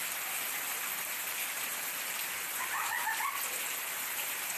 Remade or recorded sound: recorded